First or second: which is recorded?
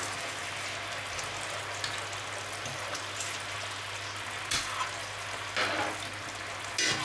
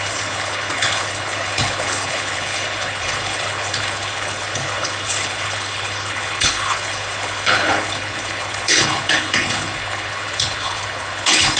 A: first